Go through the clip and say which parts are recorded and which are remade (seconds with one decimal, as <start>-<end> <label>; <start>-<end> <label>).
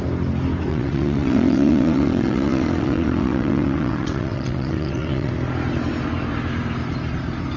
0.0-0.7 recorded; 0.7-5.3 remade; 5.3-7.6 recorded